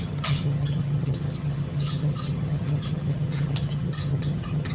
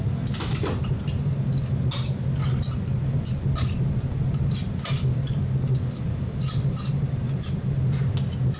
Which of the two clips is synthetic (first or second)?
first